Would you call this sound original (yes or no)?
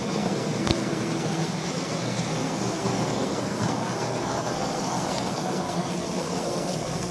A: no